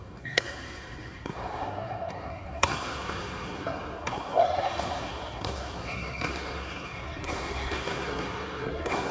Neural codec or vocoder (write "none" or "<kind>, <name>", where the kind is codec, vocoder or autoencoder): codec, SNAC